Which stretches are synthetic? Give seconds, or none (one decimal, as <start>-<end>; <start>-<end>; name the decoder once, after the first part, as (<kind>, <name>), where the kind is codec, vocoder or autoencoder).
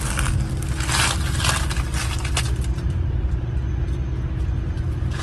none